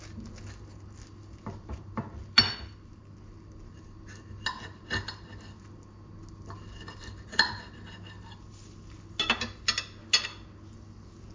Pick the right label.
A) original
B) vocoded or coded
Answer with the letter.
A